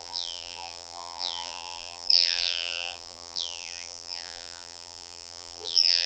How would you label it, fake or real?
fake